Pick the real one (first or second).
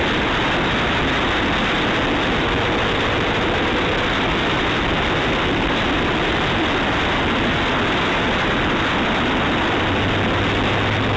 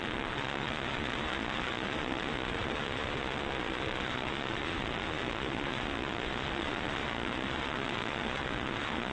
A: first